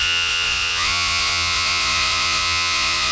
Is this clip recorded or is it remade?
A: remade